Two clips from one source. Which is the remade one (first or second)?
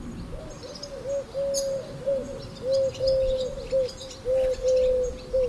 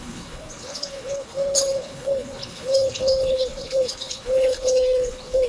second